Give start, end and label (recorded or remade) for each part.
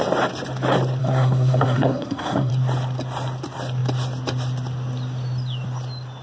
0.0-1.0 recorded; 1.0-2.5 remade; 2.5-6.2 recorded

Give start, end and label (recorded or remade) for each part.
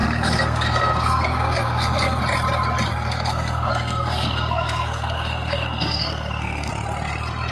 0.0-2.2 remade; 2.2-2.9 recorded; 2.9-6.7 remade; 6.7-7.5 recorded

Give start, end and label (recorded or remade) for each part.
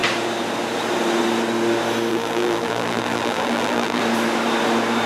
0.0-2.1 recorded; 2.1-4.0 remade; 4.0-5.1 recorded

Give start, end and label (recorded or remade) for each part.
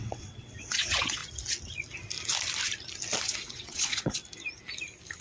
0.0-1.2 remade; 1.2-3.2 recorded; 3.2-4.2 remade; 4.2-5.2 recorded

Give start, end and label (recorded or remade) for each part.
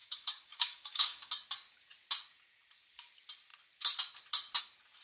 0.0-1.3 remade; 1.3-5.0 recorded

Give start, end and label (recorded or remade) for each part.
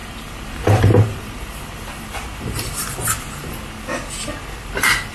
0.0-3.1 remade; 3.1-5.1 recorded